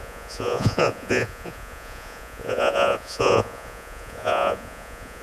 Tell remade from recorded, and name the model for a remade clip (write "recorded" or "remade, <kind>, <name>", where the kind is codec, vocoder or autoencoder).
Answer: remade, vocoder, Vocos